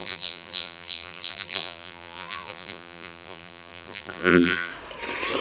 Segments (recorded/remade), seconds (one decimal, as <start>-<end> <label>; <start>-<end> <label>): 0.0-4.7 remade; 4.7-5.4 recorded